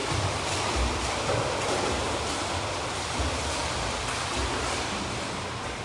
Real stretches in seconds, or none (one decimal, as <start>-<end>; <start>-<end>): 0.0-5.8